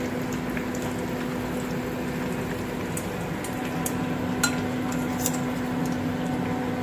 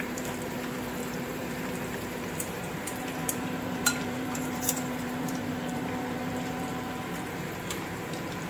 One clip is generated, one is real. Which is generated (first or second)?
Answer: second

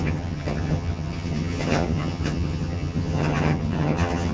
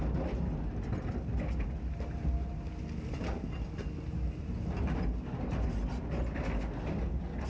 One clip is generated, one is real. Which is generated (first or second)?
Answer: first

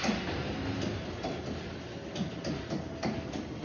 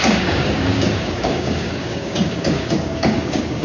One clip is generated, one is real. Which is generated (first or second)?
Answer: second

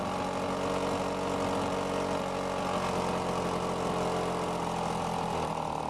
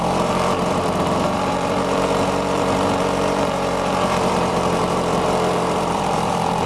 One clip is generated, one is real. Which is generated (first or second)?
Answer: second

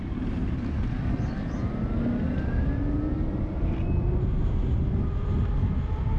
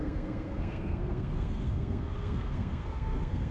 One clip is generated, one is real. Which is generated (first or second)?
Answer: second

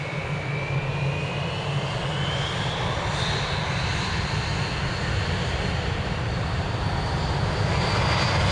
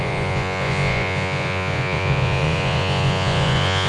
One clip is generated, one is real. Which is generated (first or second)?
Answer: second